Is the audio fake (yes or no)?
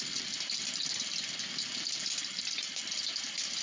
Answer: no